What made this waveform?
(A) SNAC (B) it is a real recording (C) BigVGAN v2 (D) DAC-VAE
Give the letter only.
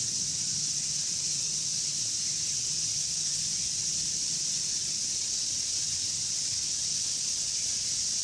B